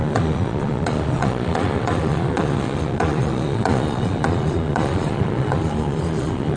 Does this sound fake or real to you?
fake